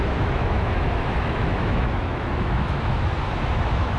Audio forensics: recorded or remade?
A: remade